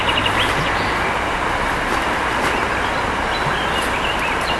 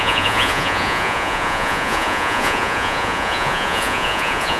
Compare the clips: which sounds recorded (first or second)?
first